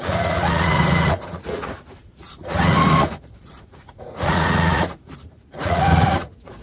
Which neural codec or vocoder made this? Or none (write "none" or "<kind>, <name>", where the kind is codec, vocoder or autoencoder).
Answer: vocoder, Vocos